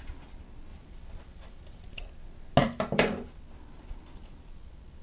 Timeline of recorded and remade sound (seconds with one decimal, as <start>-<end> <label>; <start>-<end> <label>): 0.0-0.7 recorded; 0.7-2.0 remade; 2.0-2.6 recorded; 2.6-4.4 remade; 4.4-5.0 recorded